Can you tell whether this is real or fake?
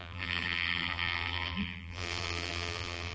fake